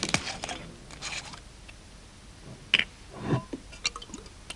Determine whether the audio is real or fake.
real